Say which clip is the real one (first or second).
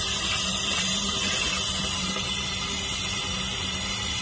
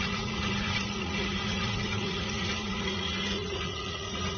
first